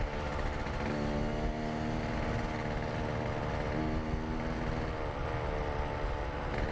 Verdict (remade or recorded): recorded